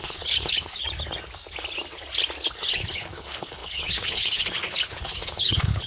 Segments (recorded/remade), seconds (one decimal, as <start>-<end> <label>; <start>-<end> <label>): 0.0-0.8 remade; 0.8-2.5 recorded; 2.5-5.9 remade